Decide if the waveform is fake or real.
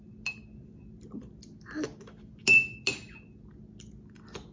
real